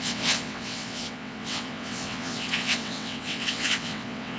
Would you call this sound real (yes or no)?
no